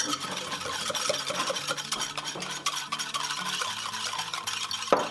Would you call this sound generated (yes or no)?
yes